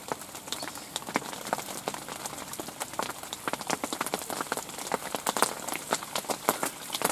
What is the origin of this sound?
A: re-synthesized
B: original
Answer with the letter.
B